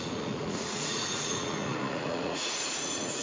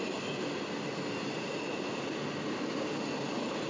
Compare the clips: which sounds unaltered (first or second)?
second